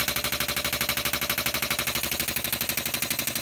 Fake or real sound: real